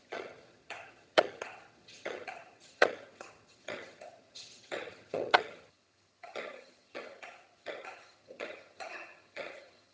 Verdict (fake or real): fake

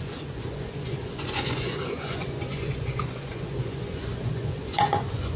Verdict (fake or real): fake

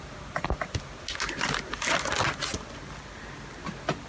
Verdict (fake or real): real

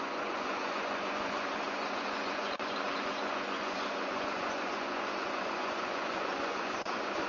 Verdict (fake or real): fake